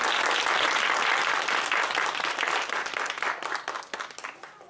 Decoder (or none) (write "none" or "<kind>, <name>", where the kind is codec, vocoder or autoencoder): none